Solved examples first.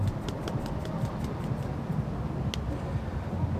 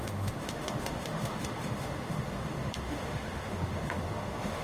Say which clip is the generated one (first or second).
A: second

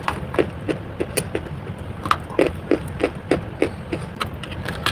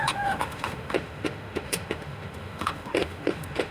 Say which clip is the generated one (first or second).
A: second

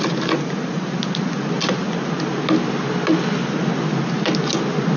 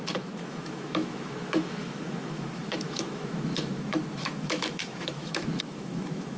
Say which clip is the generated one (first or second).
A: second